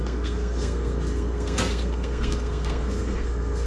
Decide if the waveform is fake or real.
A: fake